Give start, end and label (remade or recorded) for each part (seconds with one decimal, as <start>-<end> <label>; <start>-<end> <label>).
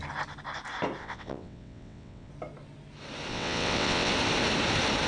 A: 0.0-1.0 recorded; 1.0-2.3 remade; 2.3-3.3 recorded; 3.3-4.1 remade; 4.1-5.1 recorded